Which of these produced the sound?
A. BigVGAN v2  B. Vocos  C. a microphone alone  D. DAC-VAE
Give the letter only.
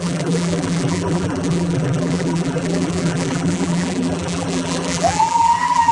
A